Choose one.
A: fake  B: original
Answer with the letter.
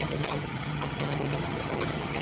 A